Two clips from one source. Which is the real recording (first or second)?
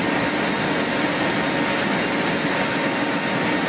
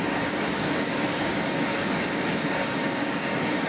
first